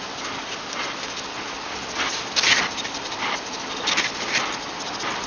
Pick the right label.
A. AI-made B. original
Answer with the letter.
A